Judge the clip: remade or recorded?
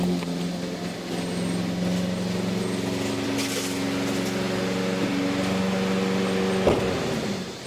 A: recorded